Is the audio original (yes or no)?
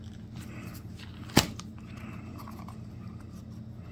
yes